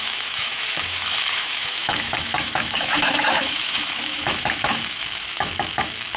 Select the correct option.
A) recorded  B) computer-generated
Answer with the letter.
B